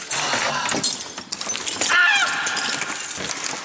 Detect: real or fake real